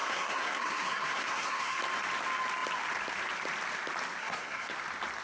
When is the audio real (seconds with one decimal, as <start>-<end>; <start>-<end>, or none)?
1.8-4.2; 4.7-5.2